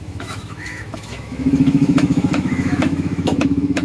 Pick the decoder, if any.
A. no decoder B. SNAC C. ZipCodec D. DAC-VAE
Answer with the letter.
D